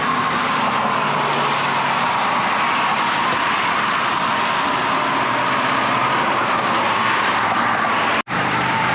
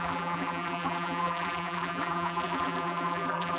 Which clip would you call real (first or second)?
first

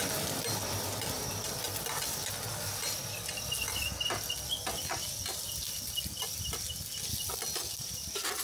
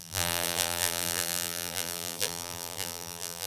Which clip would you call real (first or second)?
first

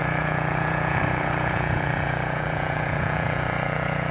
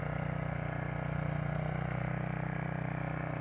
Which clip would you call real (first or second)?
second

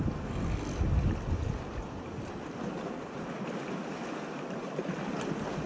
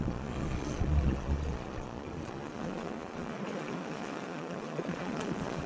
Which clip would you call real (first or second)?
first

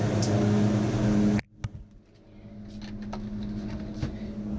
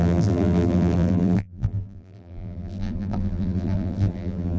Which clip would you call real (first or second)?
first